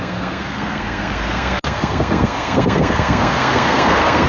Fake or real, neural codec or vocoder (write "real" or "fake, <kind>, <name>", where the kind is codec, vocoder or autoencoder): fake, codec, SNAC